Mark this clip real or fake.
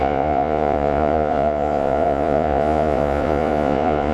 fake